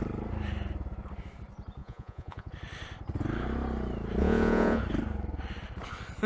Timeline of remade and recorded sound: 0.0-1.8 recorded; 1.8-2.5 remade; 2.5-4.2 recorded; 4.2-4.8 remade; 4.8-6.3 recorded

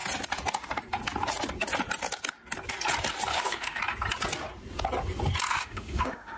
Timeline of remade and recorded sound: 0.0-3.3 recorded; 3.3-3.8 remade; 3.8-5.5 recorded; 5.5-6.4 remade

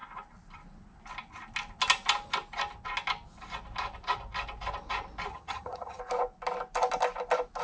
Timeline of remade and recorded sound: 0.0-5.3 recorded; 5.3-6.0 remade; 6.0-7.6 recorded

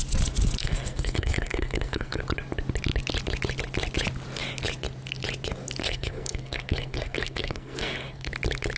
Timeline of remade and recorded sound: 0.0-0.6 recorded; 0.6-2.2 remade; 2.2-5.8 recorded; 5.8-8.3 remade; 8.3-8.8 recorded